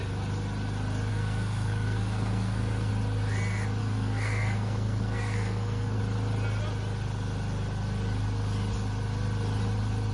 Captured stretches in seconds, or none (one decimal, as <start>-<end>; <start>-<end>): 0.0-1.1; 2.9-3.8; 6.0-10.1